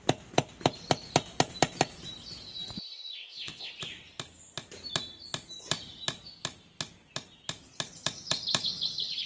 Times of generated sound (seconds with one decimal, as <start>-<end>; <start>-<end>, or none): 3.2-3.7